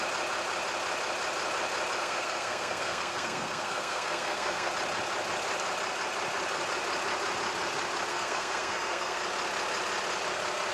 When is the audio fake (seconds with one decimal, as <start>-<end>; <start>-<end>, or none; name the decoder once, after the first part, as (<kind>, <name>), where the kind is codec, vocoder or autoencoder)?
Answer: 2.0-4.7 (codec, SNAC); 8.1-9.2